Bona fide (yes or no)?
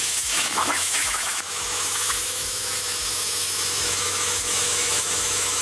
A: no